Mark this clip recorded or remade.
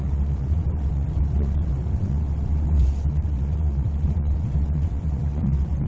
remade